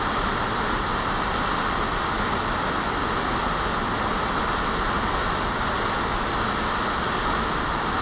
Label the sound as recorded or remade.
recorded